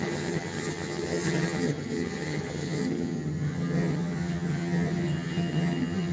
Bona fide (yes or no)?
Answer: no